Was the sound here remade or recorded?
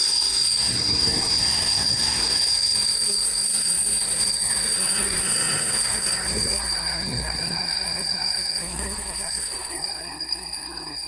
remade